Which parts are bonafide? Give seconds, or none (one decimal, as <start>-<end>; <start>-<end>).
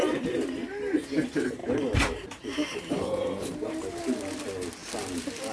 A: 0.0-1.6; 4.0-5.5